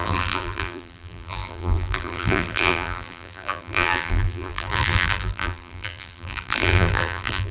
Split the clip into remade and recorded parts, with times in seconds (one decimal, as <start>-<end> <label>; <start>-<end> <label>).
0.0-7.5 remade